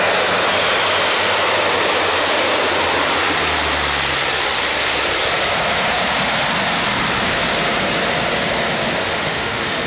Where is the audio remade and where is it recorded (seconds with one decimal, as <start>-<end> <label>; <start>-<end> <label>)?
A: 0.0-9.0 recorded; 9.0-9.9 remade

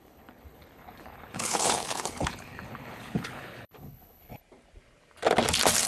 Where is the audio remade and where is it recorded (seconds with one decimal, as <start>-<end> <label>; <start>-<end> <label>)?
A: 0.0-4.4 remade; 4.4-5.9 recorded

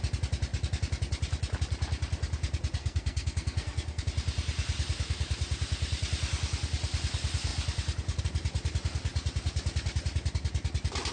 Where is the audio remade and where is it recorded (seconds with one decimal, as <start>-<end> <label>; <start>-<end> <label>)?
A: 0.0-2.8 recorded; 2.8-4.0 remade; 4.0-11.1 recorded

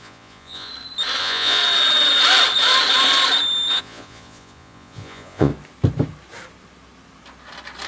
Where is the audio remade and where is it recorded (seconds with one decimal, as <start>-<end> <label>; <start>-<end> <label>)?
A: 0.0-0.7 remade; 0.7-1.2 recorded; 1.2-1.6 remade; 1.6-3.8 recorded; 3.8-5.5 remade; 5.5-7.9 recorded

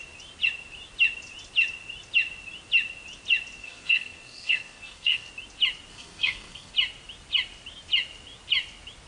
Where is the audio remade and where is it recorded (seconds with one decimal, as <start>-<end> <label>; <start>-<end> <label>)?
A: 0.0-3.6 recorded; 3.6-5.3 remade; 5.3-5.9 recorded; 5.9-6.7 remade; 6.7-9.1 recorded

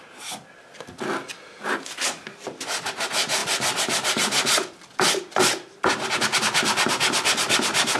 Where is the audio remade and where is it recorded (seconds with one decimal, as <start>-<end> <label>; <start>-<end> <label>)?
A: 0.0-8.0 recorded